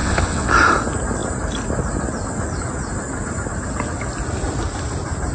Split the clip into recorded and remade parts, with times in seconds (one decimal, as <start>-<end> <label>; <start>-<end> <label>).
0.0-0.5 remade; 0.5-5.3 recorded